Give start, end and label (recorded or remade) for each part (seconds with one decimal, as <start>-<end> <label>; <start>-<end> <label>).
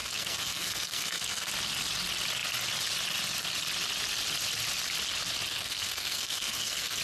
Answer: 0.0-1.5 remade; 1.5-5.5 recorded; 5.5-7.0 remade